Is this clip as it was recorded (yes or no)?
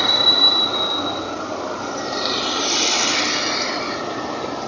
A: yes